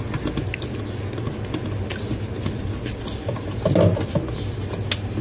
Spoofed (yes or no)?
no